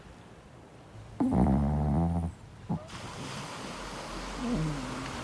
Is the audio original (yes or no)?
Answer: yes